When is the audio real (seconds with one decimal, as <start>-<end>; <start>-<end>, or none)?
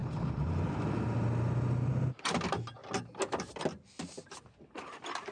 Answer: 1.0-5.3